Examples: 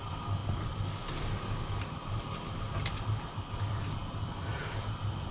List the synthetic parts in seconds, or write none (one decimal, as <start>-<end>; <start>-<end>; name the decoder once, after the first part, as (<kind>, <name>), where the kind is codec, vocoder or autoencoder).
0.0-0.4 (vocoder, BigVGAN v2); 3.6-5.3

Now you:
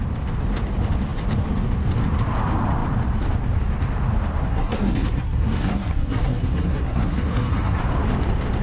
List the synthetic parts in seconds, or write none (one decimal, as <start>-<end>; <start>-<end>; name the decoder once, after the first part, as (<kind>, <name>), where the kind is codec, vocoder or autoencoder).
4.5-7.8 (codec, SNAC)

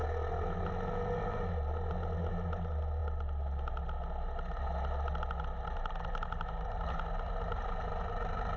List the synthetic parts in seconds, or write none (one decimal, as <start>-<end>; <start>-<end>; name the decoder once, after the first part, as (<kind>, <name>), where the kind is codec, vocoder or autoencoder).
none

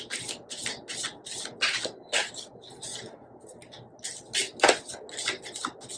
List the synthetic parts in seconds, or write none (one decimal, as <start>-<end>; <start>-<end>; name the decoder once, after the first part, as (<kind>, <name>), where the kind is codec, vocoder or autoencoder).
none